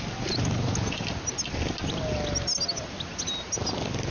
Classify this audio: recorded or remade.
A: recorded